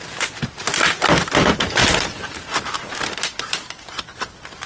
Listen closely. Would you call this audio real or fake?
real